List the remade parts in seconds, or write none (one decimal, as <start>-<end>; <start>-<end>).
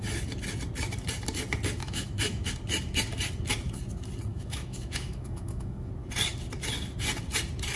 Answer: 1.8-2.5; 4.3-5.9